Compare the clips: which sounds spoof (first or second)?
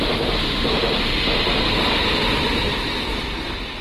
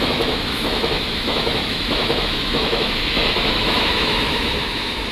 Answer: second